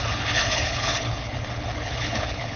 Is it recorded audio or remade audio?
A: remade